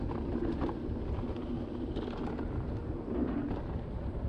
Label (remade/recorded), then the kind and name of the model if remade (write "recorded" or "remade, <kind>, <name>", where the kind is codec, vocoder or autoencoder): recorded